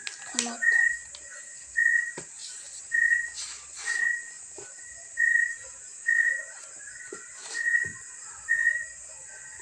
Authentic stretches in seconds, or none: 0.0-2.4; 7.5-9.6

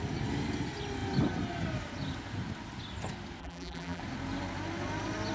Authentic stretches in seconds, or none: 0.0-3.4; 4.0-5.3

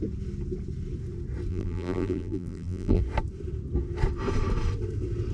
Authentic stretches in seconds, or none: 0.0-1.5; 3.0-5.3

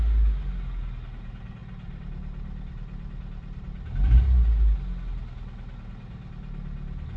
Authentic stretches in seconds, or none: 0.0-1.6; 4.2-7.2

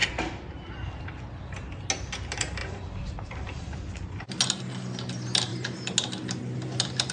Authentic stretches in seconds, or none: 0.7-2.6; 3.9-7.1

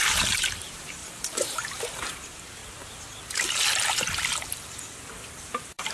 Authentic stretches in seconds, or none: 2.6-5.4